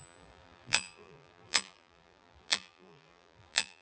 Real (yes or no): no